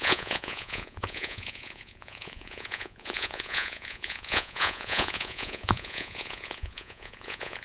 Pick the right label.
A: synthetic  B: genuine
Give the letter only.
A